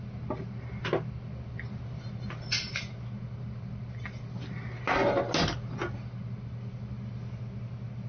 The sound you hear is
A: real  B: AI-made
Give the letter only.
A